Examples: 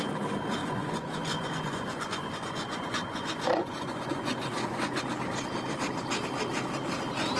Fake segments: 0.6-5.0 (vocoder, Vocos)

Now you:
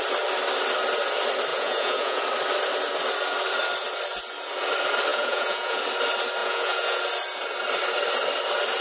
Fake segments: 1.5-2.2 (vocoder, Vocos); 5.1-5.8; 6.4-7.0

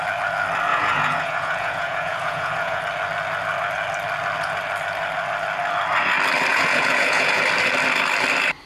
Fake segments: 0.7-2.8 (vocoder, Vocos); 6.5-7.4